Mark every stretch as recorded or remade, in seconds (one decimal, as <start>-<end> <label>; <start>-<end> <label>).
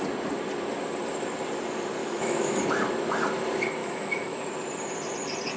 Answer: 0.0-2.0 recorded; 2.0-2.6 remade; 2.6-3.8 recorded; 3.8-4.4 remade; 4.4-5.6 recorded